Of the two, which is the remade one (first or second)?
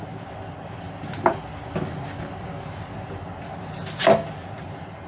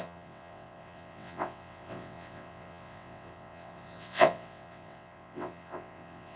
second